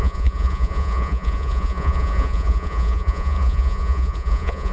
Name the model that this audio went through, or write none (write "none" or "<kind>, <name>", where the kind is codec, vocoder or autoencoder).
vocoder, Vocos